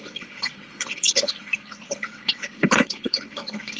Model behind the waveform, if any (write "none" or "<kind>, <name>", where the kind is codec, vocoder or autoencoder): codec, HILCodec